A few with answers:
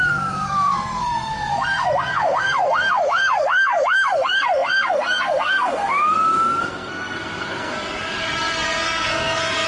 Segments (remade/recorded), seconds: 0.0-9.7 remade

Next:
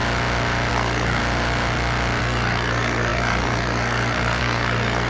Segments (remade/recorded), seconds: 0.0-0.7 recorded; 0.7-1.2 remade; 1.2-2.2 recorded; 2.2-5.1 remade

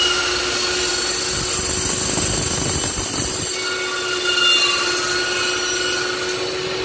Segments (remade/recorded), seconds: 0.0-6.8 recorded